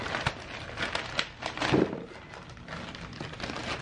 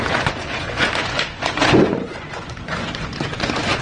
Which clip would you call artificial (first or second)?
second